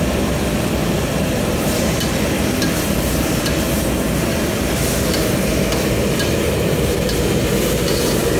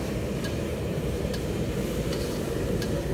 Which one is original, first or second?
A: first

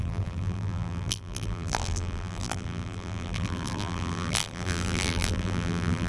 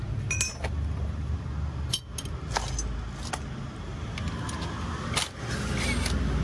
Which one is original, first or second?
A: second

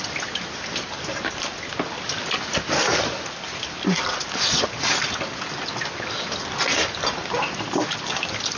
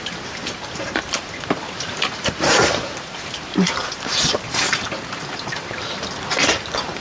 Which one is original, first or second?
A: first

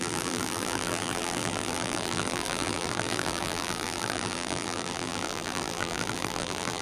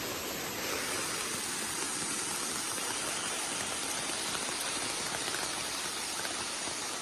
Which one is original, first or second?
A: second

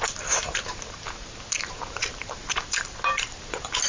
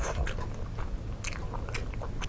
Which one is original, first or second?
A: second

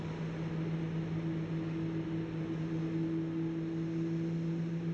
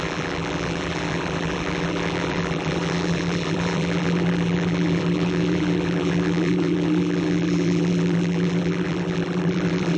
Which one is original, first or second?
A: first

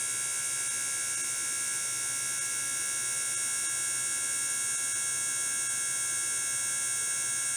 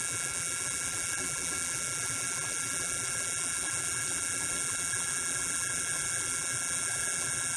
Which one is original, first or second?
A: first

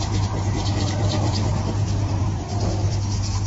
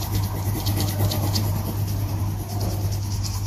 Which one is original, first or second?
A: second